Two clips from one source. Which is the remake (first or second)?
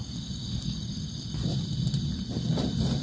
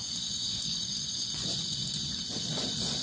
second